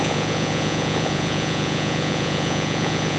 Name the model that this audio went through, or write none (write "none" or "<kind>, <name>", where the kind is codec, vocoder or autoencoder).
vocoder, Vocos